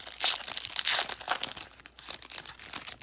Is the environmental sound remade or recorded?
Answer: recorded